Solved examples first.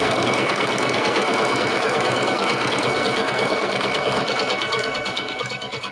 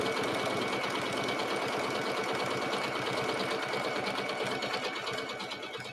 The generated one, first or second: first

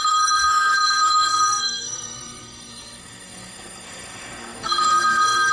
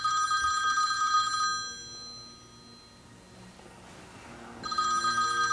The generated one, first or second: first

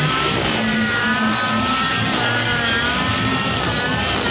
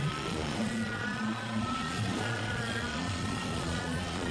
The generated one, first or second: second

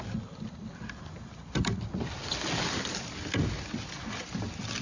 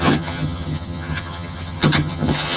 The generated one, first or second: second